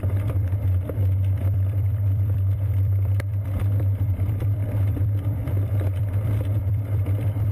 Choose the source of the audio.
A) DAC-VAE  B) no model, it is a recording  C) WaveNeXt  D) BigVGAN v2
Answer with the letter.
D